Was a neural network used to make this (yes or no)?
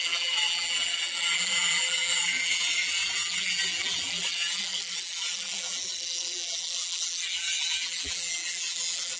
yes